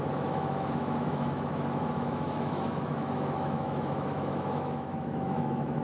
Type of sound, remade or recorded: remade